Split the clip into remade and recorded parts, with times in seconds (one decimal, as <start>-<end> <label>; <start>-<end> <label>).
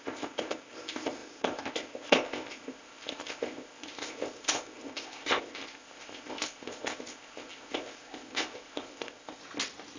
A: 0.0-9.4 remade; 9.4-10.0 recorded